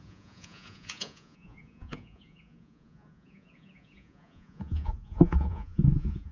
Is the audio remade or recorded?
remade